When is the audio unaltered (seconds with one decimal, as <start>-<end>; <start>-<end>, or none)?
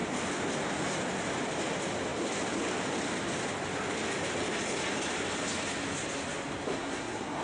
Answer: 0.0-6.7